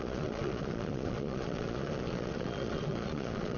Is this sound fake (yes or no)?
yes